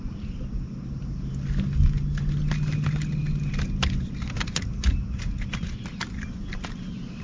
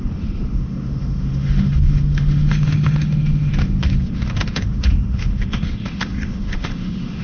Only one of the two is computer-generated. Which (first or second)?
second